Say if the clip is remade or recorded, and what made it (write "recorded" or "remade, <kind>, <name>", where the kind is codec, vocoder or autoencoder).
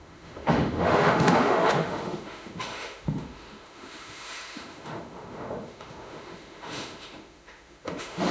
remade, autoencoder, DAC-VAE